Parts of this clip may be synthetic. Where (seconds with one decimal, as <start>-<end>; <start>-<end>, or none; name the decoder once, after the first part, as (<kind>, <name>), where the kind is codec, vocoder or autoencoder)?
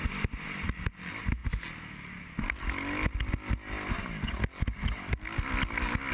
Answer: none